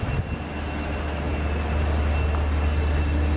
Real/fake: real